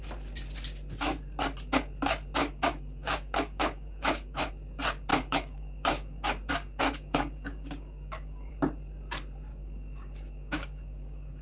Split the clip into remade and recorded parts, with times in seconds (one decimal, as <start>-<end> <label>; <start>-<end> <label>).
0.0-2.4 recorded; 2.4-4.5 remade; 4.5-5.1 recorded; 5.1-8.5 remade; 8.5-9.5 recorded; 9.5-11.4 remade